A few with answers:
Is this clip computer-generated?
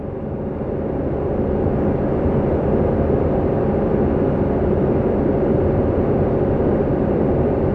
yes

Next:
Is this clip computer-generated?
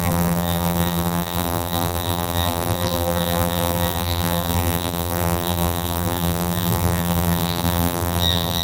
yes